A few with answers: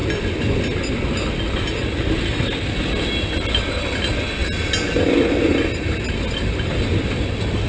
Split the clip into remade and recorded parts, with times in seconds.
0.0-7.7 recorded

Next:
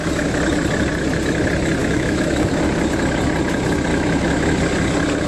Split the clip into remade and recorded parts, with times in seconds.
0.0-1.8 recorded; 1.8-2.5 remade; 2.5-3.9 recorded; 3.9-4.6 remade; 4.6-5.3 recorded

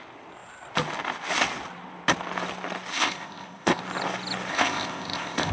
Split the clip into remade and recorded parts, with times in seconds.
0.0-2.9 recorded; 2.9-3.8 remade; 3.8-4.5 recorded; 4.5-5.5 remade